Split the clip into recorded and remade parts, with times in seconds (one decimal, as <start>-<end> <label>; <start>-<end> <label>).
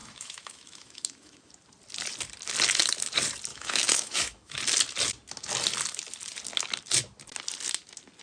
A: 0.0-1.5 remade; 1.5-3.5 recorded; 3.5-4.6 remade; 4.6-8.2 recorded